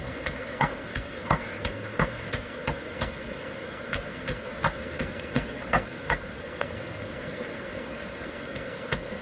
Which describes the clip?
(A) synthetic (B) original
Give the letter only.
A